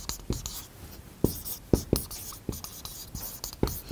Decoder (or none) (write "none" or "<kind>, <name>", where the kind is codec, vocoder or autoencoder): none